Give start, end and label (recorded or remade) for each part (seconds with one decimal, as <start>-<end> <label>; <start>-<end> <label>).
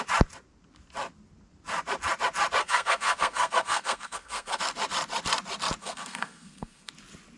0.0-2.6 recorded; 2.6-4.6 remade; 4.6-5.8 recorded; 5.8-6.9 remade; 6.9-7.4 recorded